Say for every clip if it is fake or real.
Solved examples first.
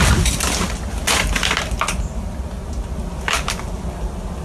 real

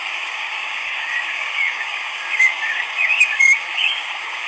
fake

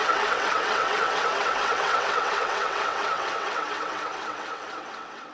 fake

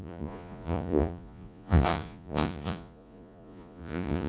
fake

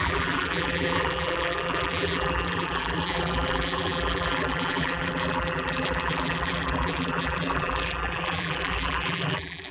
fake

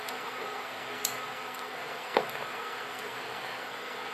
fake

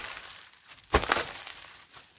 fake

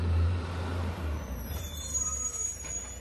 fake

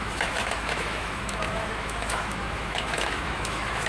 fake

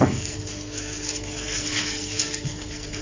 fake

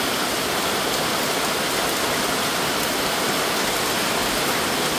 real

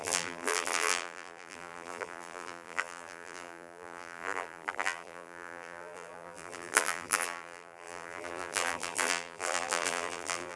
fake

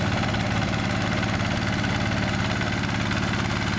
real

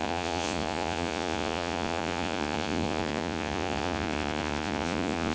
fake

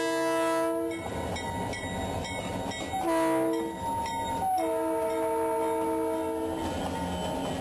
real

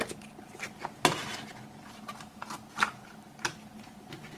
real